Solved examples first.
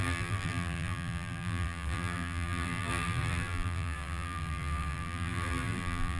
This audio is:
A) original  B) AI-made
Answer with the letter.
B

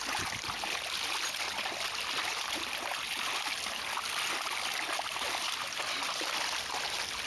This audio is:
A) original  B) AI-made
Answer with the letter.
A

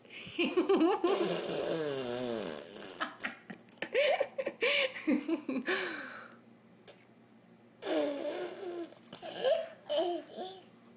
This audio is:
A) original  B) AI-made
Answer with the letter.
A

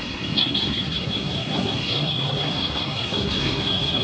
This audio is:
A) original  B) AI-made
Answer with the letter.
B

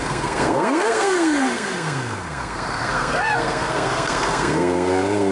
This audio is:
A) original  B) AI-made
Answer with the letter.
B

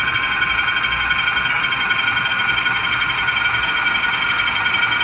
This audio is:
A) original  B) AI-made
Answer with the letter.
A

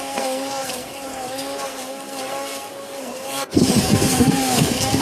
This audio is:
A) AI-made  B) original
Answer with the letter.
A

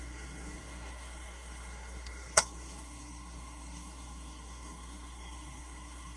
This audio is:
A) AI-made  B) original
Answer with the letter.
A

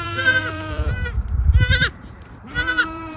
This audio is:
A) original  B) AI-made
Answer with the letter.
B